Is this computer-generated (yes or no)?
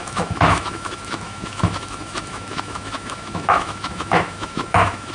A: yes